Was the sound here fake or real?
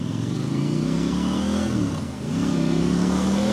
fake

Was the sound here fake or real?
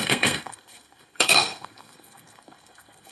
fake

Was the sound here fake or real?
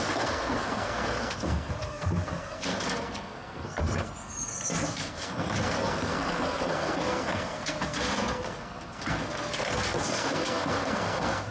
fake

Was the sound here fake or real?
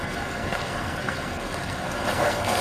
fake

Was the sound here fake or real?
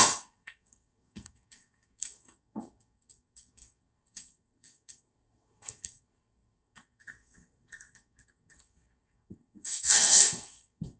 fake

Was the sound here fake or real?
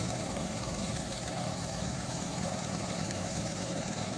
fake